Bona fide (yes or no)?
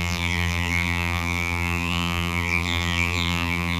no